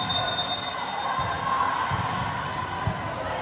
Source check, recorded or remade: recorded